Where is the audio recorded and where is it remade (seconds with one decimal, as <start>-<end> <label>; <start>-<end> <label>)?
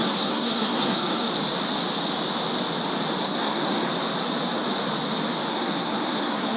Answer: 0.0-1.3 remade; 1.3-3.2 recorded; 3.2-3.9 remade; 3.9-5.5 recorded; 5.5-6.6 remade